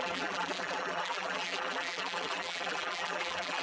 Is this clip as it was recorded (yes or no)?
no